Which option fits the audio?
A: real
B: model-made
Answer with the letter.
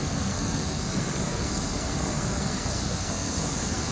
B